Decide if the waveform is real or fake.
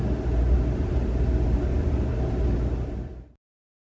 real